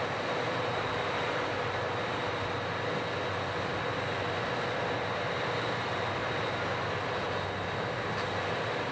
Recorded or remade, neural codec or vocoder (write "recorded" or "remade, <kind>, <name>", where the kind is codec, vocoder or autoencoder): recorded